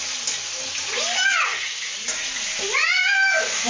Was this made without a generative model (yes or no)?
yes